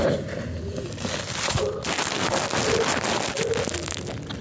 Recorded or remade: recorded